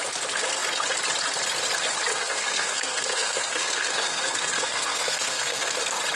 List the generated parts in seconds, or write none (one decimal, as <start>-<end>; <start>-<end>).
2.1-5.8